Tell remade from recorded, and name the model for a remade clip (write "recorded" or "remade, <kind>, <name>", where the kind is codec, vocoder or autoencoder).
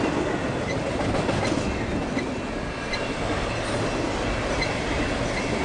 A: recorded